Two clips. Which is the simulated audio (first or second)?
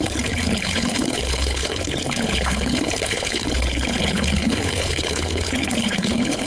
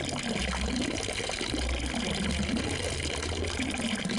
first